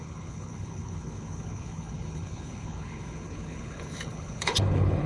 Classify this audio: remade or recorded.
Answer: remade